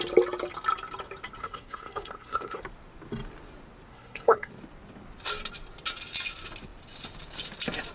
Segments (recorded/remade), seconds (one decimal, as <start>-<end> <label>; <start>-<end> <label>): 0.0-1.4 recorded; 1.4-2.6 remade; 2.6-3.9 recorded; 3.9-4.5 remade; 4.5-7.9 recorded